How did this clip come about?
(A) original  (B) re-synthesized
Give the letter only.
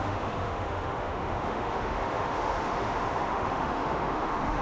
B